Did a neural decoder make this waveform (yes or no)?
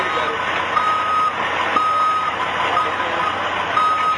no